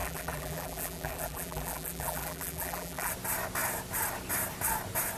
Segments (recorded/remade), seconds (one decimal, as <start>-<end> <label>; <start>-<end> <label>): 0.0-3.1 remade; 3.1-5.2 recorded